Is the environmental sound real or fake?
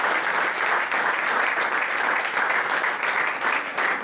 real